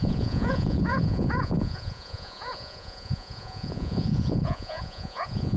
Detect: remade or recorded remade